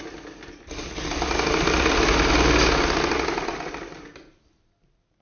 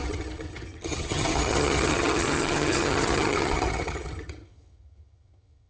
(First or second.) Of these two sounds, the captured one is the first